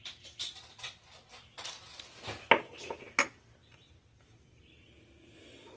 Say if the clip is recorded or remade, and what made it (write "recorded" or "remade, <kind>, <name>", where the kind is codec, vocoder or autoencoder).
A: recorded